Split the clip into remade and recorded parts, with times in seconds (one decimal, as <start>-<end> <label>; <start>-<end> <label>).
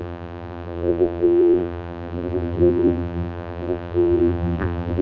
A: 0.0-5.0 remade